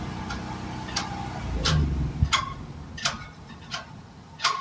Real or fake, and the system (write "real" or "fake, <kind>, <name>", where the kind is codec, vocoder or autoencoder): real